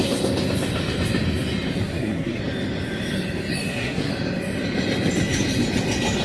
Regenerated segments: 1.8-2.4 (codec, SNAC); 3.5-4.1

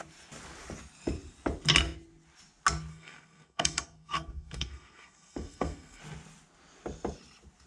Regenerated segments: 2.9-6.0 (codec, SNAC)

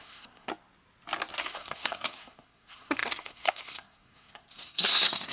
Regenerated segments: 0.0-0.5 (codec, SNAC); 1.4-5.3

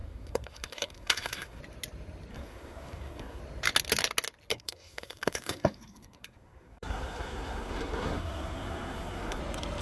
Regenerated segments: 0.0-1.6 (codec, SNAC); 2.3-3.4; 4.5-9.4

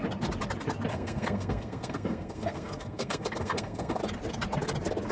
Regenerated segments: 0.9-4.0 (codec, SNAC)

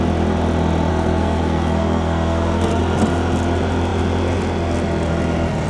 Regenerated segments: 0.9-2.8 (codec, SNAC)

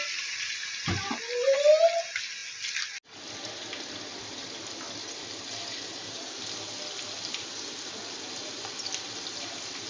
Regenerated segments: none

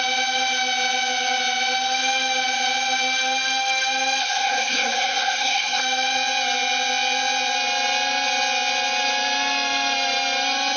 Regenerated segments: 4.2-5.8 (codec, SNAC)